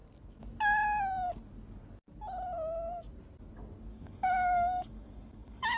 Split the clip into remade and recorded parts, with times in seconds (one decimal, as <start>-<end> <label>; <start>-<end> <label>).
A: 0.0-3.9 recorded; 3.9-5.8 remade